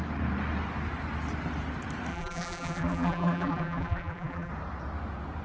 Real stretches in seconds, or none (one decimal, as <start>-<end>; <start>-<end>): 0.0-2.1; 4.5-5.4

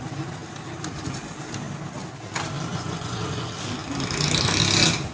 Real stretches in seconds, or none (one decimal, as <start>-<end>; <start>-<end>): 0.0-2.7; 3.5-5.1